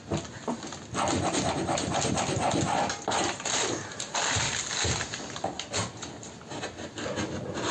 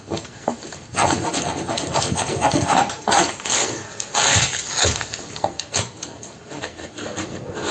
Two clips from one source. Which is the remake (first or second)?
second